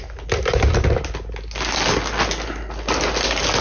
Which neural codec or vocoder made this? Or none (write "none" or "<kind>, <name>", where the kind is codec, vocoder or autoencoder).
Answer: none